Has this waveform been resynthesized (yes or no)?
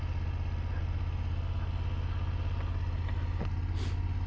no